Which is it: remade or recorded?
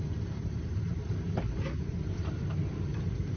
remade